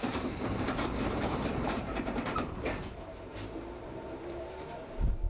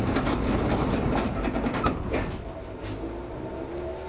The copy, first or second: first